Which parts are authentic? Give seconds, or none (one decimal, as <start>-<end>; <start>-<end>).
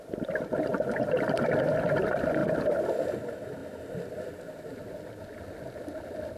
0.0-0.7; 1.5-2.4; 3.0-6.4